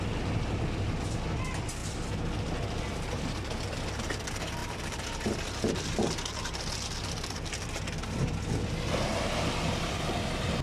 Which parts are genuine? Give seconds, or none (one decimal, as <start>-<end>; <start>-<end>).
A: 0.0-4.6; 6.6-10.6